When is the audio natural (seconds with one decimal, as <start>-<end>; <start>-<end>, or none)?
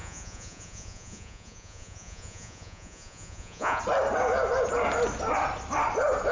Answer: 3.8-6.3